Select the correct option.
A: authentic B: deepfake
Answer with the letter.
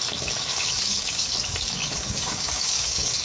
B